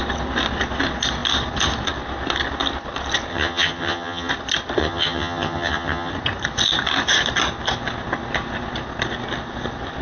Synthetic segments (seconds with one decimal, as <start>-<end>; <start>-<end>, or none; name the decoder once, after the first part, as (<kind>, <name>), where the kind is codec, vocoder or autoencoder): 3.3-4.3 (vocoder, HiFi-GAN); 4.8-6.1